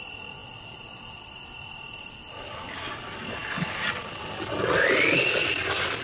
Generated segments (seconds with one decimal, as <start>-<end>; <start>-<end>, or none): none

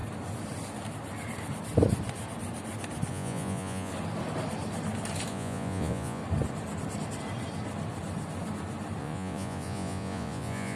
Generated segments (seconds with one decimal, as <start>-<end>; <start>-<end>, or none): 3.1-3.9; 5.3-6.2; 9.0-10.8

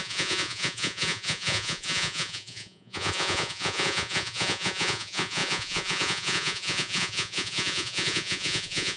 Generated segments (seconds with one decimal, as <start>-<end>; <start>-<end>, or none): 0.0-9.0